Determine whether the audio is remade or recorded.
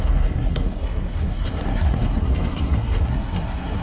remade